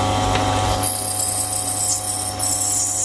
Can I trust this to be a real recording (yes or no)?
yes